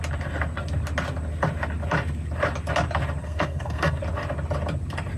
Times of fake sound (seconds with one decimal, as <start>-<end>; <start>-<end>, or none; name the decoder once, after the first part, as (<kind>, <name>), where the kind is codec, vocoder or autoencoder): 3.2-4.0 (codec, SNAC)